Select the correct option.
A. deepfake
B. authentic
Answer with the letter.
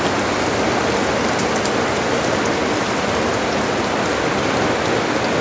B